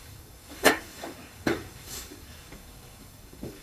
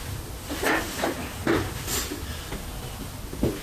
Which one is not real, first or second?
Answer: first